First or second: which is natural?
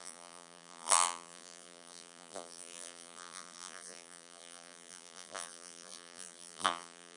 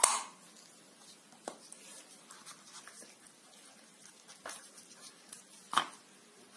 second